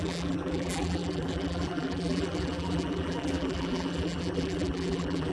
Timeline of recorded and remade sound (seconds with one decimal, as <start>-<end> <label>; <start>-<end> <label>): 0.0-5.3 remade